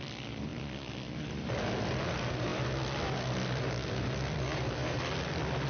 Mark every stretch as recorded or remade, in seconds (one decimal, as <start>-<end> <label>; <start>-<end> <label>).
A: 0.0-5.7 recorded